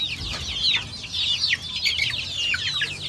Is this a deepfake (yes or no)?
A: no